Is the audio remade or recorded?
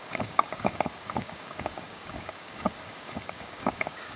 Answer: remade